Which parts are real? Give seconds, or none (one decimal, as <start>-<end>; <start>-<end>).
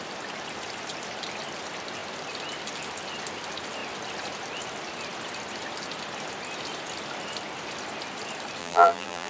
0.0-8.6